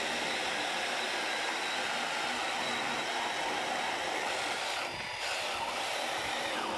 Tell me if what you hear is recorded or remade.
recorded